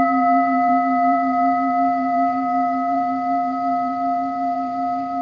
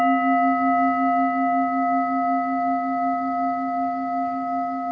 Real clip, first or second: second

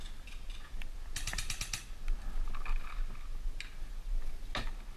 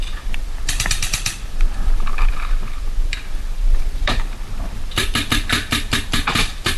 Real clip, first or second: first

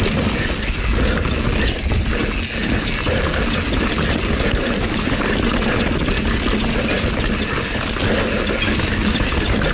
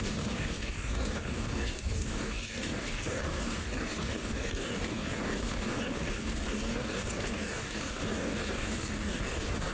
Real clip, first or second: first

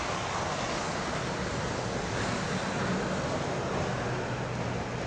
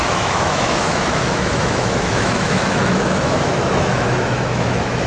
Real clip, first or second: first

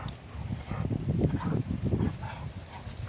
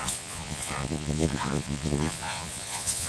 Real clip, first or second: first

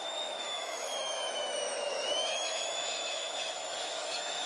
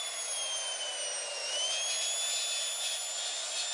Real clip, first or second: second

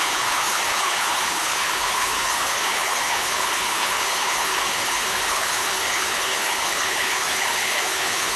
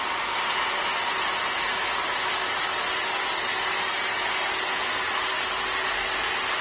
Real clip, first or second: second